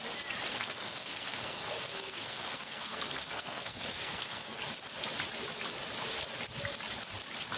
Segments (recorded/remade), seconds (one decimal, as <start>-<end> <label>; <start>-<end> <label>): 0.0-0.5 recorded; 0.5-4.6 remade; 4.6-7.6 recorded